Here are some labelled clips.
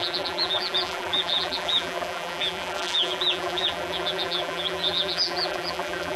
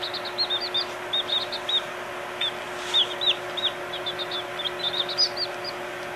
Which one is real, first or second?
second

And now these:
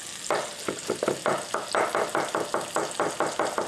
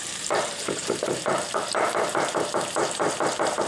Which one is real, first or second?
first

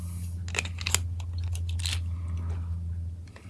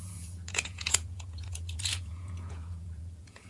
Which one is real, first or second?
first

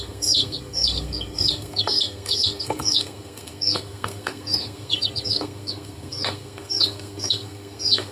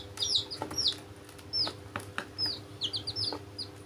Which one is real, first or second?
second